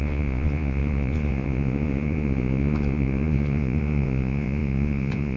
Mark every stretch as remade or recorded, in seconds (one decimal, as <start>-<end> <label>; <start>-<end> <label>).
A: 0.0-5.4 remade